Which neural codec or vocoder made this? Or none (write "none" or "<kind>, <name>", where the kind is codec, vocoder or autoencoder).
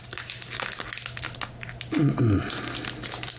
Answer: none